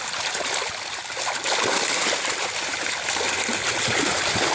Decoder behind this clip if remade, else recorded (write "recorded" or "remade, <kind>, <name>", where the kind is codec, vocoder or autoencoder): recorded